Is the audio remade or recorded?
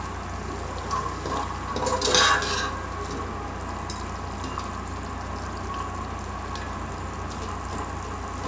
recorded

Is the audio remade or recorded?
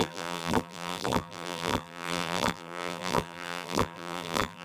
remade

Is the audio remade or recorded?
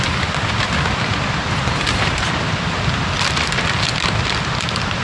recorded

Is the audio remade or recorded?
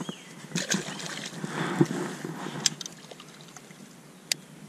recorded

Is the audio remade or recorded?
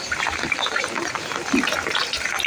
remade